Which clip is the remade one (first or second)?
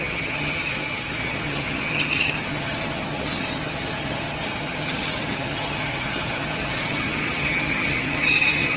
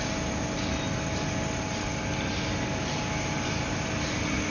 first